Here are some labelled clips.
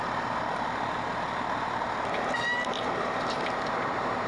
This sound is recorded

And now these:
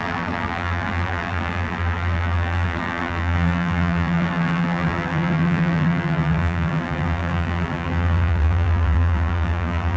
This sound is remade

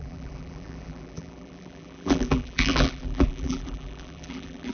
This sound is remade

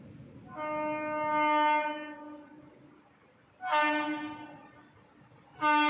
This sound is recorded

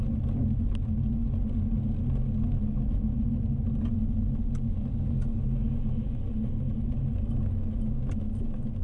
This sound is recorded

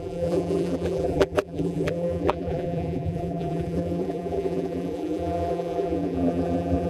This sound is remade